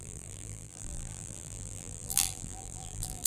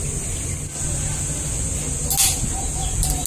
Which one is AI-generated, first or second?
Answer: first